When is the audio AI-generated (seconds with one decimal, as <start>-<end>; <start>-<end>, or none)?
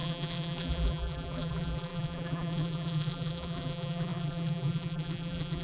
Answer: 0.0-5.6